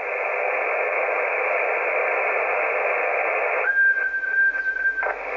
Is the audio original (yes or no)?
yes